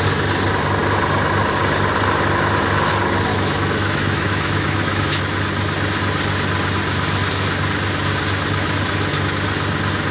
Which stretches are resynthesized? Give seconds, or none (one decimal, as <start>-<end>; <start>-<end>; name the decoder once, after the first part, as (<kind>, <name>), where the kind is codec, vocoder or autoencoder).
3.3-5.2 (autoencoder, DAC-VAE)